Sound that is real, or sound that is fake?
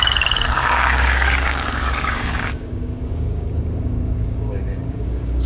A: fake